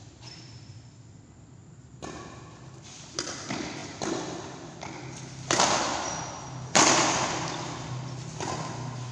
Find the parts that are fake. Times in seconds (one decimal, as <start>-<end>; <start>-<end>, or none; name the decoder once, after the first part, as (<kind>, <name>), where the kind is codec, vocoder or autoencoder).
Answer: none